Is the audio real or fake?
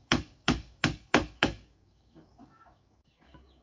fake